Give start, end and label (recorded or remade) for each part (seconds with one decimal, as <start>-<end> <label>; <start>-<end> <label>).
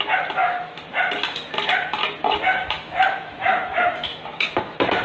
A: 0.0-0.4 recorded; 0.4-0.9 remade; 0.9-2.5 recorded; 2.5-4.6 remade; 4.6-5.0 recorded